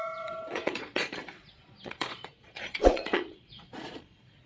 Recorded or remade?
remade